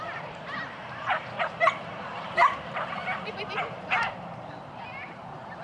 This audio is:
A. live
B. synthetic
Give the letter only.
B